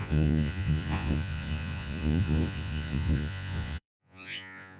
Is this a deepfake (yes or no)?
yes